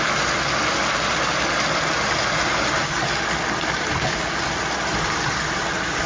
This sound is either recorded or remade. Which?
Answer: recorded